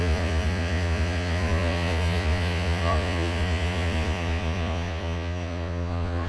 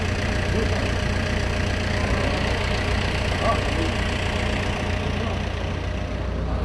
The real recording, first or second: second